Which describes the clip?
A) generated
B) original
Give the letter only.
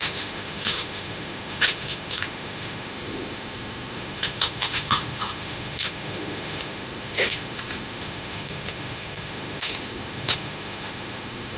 A